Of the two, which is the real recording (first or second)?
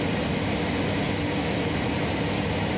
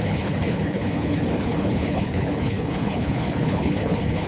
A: first